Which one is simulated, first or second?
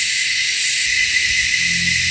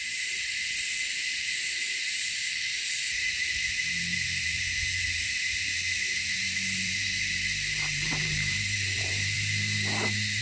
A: second